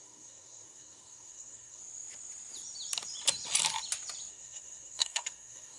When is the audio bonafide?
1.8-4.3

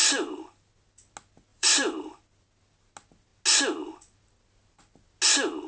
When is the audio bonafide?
0.7-1.5; 2.2-5.7

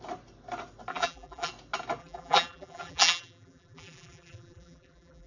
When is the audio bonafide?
0.0-0.9; 1.5-2.0

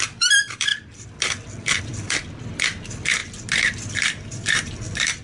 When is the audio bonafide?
0.7-1.8; 3.2-3.8

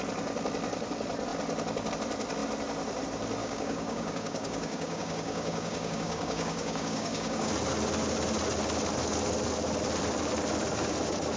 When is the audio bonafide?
0.0-3.4; 7.5-11.4

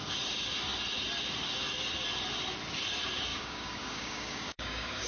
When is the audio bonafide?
0.0-3.3

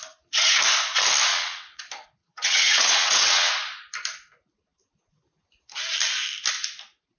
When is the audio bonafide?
0.0-1.3; 1.8-2.2; 3.5-7.2

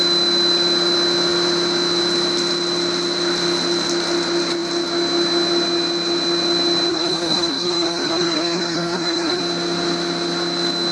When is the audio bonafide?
0.0-6.9; 9.4-10.9